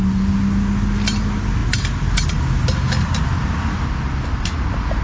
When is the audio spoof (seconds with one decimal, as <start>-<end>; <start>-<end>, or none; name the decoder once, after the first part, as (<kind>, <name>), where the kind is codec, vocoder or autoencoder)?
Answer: none